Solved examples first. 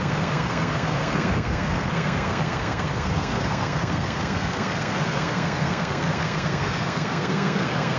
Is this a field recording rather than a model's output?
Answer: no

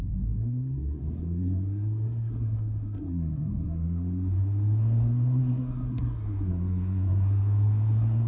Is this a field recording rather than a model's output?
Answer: no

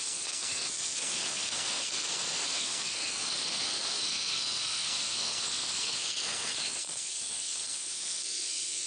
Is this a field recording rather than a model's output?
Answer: no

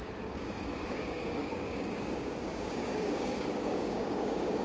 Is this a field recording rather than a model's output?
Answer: no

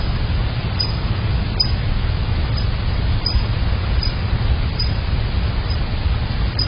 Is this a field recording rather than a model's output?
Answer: yes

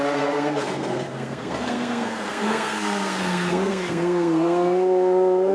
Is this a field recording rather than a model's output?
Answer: no